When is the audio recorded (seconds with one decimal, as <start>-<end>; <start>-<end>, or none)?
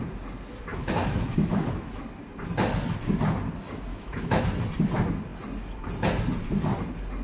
0.0-0.7; 2.0-3.9; 4.4-7.2